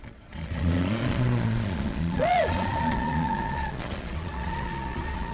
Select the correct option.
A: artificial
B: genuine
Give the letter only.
A